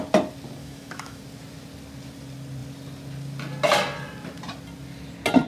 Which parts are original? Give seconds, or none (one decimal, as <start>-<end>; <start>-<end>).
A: 0.0-0.6; 1.2-5.5